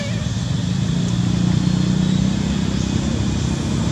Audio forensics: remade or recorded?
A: recorded